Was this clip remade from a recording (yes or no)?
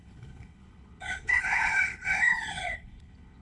yes